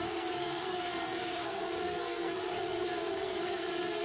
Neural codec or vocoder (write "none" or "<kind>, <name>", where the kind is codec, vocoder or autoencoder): codec, SNAC